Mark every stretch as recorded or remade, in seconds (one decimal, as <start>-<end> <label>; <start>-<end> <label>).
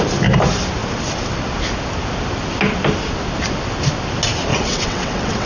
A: 0.0-4.5 recorded; 4.5-5.5 remade